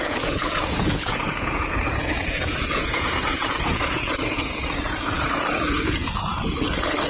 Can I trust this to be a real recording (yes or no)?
no